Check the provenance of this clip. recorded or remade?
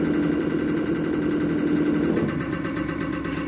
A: recorded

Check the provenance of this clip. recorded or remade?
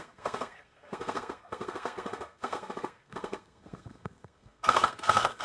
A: remade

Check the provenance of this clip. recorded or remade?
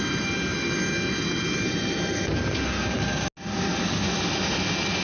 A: recorded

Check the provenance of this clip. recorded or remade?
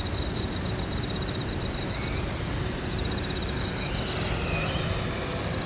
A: recorded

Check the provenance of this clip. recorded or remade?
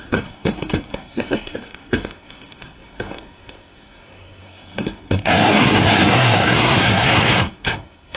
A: remade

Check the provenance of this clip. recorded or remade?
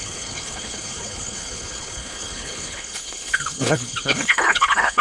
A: remade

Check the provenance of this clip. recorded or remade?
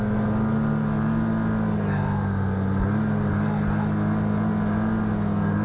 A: recorded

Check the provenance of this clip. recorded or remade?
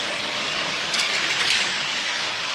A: remade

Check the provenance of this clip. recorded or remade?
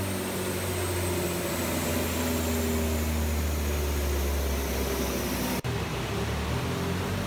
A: recorded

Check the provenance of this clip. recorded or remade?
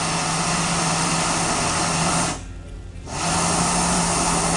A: recorded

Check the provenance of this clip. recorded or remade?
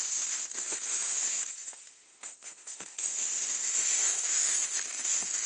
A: remade